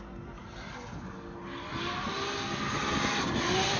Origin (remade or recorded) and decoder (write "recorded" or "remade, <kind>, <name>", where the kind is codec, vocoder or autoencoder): recorded